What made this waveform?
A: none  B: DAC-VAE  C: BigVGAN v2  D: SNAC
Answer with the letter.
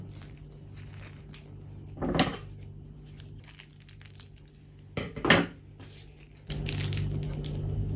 A